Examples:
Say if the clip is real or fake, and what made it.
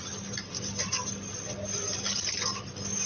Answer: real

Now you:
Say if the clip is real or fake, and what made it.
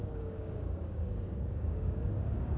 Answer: fake, codec, DAC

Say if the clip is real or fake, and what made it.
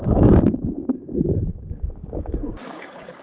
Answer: fake, codec, DAC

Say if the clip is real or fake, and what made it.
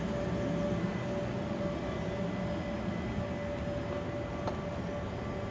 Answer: real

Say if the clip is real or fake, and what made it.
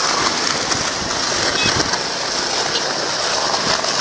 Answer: real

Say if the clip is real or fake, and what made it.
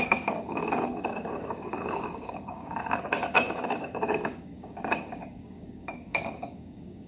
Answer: fake, codec, DAC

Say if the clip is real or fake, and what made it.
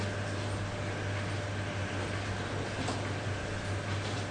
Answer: real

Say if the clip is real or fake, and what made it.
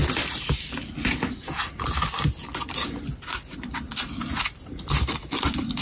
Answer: real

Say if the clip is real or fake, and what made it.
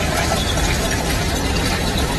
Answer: real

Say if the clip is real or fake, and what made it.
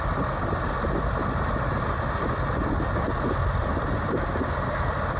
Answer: real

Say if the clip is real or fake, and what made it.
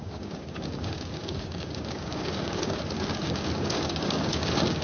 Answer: fake, codec, DAC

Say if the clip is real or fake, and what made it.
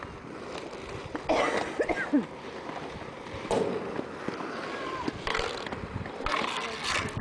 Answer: real